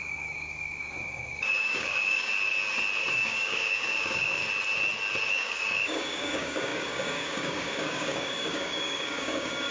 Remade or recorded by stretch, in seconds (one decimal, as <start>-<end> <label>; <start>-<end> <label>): 0.0-2.3 remade; 2.3-3.1 recorded; 3.1-4.4 remade; 4.4-5.3 recorded; 5.3-9.7 remade